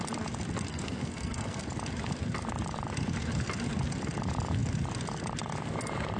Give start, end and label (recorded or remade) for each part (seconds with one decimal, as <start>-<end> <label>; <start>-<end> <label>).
0.0-0.7 recorded; 0.7-1.6 remade; 1.6-6.2 recorded